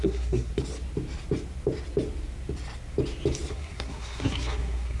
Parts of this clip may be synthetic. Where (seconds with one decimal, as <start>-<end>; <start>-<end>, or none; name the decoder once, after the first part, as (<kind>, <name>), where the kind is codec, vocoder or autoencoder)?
0.0-0.5 (codec, SNAC); 3.5-5.0